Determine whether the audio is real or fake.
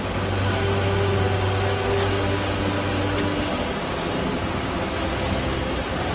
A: real